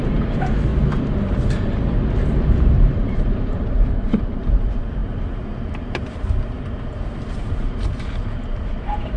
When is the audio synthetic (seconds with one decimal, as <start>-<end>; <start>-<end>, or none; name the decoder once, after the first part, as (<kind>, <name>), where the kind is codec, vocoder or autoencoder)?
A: 0.0-0.7 (vocoder, BigVGAN v2); 2.4-9.2